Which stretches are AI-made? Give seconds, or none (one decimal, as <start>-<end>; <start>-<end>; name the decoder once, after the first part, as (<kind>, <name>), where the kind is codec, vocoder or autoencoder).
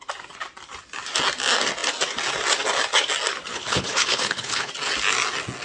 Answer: 3.5-4.7 (codec, HILCodec)